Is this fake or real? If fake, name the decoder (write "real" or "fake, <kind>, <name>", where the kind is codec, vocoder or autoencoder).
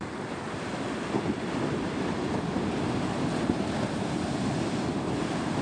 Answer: fake, vocoder, BigVGAN v2